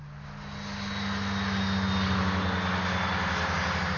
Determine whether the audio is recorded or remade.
recorded